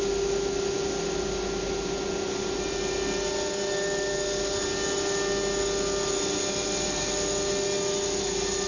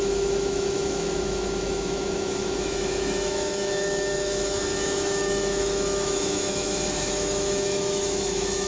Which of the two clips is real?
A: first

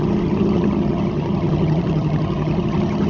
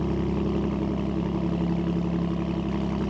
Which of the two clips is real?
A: second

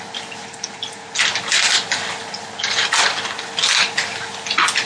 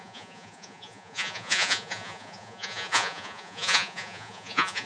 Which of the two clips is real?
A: first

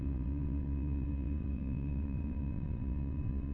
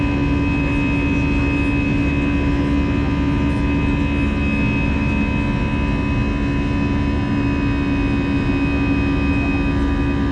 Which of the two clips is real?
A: second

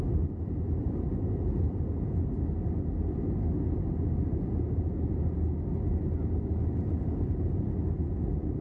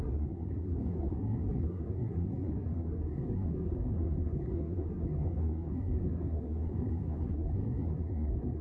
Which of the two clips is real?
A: first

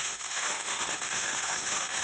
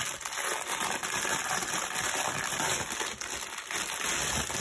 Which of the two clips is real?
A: second